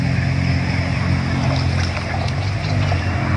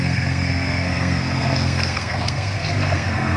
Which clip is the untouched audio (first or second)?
first